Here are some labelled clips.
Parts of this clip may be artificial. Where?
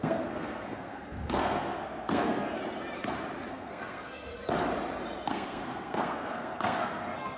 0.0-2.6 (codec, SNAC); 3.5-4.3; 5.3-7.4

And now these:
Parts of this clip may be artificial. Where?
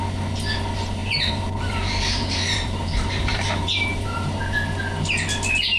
1.0-4.4 (vocoder, BigVGAN v2)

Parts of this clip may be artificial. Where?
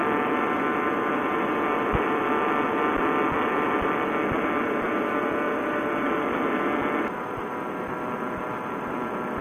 none